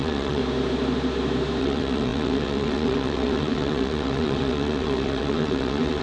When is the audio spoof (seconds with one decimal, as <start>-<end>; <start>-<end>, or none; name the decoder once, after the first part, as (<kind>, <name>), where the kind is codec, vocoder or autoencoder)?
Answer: 0.0-0.4 (vocoder, WaveNeXt); 1.6-6.0